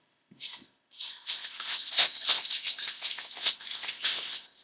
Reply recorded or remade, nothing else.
remade